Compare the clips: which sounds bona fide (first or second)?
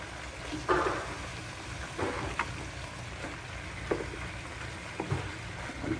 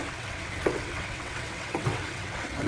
first